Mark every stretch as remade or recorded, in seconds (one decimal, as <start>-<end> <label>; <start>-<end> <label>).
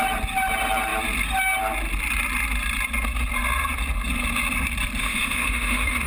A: 0.0-5.0 recorded; 5.0-6.1 remade